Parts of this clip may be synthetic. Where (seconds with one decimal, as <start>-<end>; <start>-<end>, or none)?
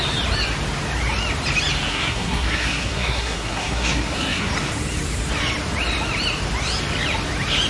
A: 1.9-4.5